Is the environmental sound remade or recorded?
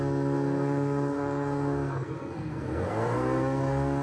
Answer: remade